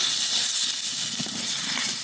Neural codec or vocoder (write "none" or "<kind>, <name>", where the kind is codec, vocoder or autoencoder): none